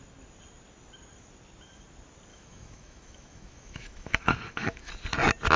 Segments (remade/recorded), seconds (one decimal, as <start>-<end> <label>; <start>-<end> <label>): 0.0-2.3 recorded; 2.3-4.9 remade; 4.9-5.6 recorded